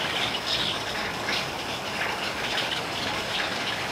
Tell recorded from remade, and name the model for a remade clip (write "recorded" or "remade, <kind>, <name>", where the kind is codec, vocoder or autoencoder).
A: remade, codec, DAC